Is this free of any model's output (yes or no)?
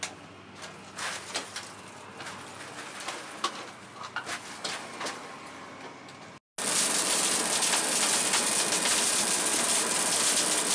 yes